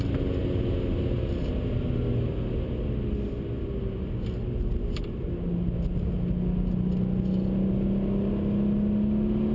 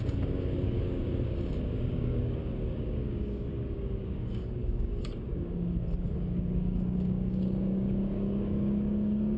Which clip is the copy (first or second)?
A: second